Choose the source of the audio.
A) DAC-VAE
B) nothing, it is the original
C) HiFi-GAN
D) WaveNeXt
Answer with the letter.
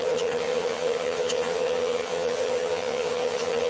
C